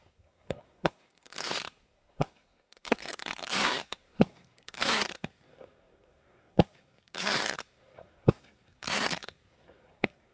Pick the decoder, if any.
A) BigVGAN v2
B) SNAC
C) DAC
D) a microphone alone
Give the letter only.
B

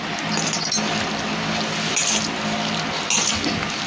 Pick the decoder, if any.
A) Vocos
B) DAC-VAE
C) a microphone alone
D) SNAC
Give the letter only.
C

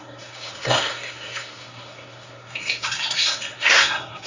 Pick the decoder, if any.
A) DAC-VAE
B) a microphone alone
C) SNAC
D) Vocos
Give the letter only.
C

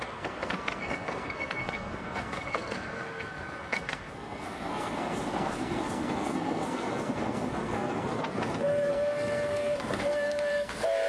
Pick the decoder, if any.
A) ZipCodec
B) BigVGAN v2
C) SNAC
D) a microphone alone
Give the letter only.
C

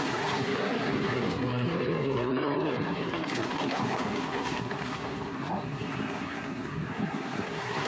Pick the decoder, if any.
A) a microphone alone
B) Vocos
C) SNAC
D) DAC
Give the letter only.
C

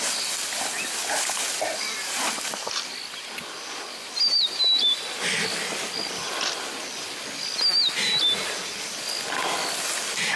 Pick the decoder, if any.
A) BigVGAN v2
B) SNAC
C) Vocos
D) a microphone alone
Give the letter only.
D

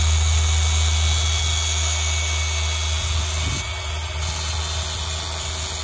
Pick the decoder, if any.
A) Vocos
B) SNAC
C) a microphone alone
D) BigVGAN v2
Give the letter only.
C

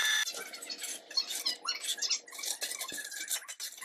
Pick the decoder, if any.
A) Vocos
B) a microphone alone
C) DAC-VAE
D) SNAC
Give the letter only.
B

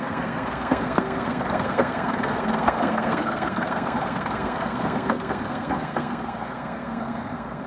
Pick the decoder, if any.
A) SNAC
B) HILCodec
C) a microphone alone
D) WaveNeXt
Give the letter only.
A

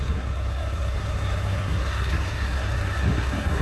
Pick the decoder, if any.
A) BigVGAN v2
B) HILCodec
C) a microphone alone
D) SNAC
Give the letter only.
D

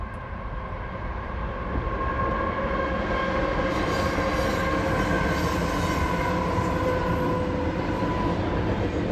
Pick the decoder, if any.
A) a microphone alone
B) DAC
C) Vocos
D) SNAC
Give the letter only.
A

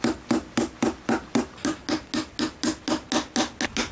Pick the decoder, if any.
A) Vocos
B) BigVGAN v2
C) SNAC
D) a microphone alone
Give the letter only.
D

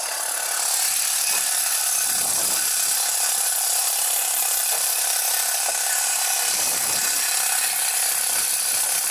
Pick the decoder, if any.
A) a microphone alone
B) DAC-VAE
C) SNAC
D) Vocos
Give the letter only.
A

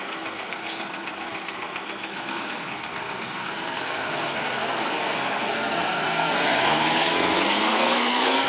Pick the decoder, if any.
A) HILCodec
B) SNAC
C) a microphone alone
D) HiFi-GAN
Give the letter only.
B